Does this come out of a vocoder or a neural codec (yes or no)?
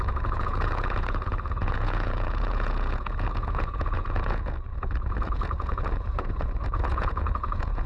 yes